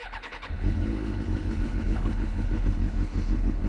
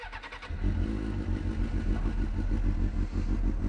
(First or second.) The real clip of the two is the second